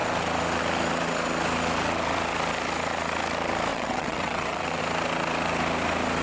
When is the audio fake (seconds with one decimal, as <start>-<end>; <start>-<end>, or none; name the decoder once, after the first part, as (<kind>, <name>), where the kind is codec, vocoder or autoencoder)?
3.7-4.8 (vocoder, WaveNeXt)